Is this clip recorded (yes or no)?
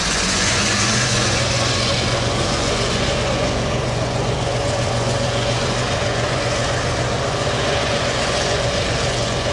no